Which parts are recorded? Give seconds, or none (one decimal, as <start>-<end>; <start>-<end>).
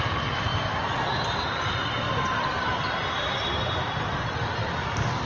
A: 0.0-0.5; 3.7-4.6